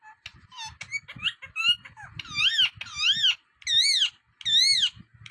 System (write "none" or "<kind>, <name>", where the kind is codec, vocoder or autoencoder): none